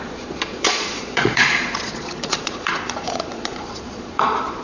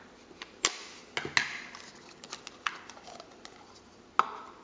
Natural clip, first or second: second